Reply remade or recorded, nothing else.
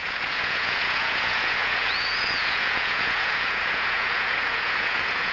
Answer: remade